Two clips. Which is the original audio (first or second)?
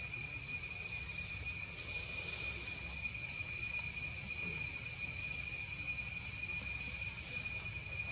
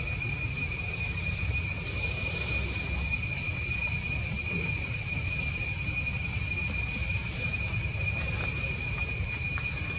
first